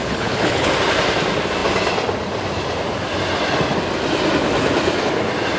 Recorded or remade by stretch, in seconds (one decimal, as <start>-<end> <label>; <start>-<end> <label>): 0.0-0.7 remade; 0.7-5.6 recorded